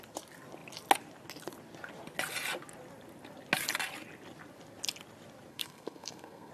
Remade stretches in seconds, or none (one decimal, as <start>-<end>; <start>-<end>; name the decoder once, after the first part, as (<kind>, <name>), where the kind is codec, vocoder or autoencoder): 5.5-6.5 (codec, SNAC)